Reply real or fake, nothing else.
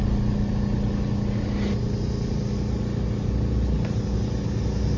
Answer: real